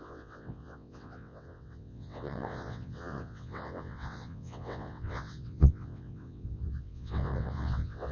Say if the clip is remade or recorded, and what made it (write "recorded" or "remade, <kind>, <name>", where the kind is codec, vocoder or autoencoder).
remade, vocoder, WaveNeXt